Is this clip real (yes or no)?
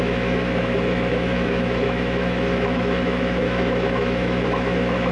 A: no